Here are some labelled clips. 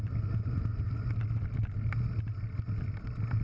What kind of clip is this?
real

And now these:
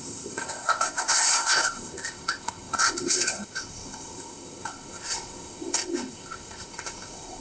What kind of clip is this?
fake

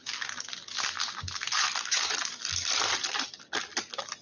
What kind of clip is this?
real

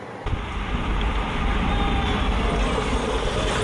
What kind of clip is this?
real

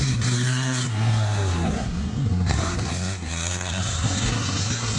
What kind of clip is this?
fake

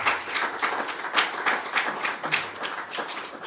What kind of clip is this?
real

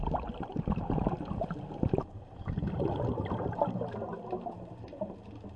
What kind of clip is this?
real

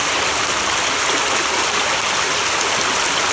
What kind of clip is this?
real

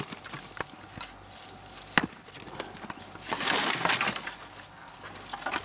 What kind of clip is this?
real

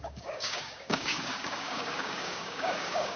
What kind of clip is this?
fake